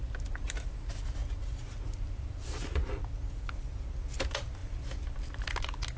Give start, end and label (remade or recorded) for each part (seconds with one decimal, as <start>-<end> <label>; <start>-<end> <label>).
0.0-6.0 recorded